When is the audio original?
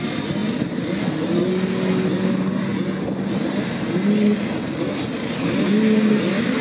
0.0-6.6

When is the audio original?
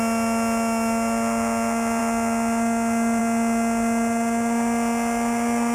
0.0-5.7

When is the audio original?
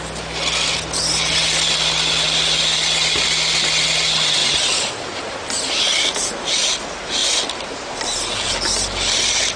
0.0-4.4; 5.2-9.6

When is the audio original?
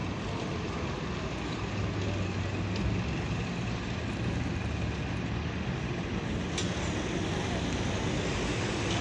0.0-9.0